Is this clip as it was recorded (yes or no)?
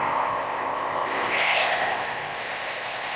no